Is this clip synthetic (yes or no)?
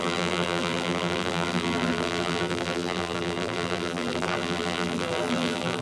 yes